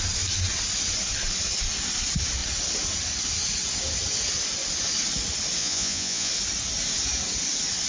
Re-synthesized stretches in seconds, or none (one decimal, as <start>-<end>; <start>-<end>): 5.6-6.3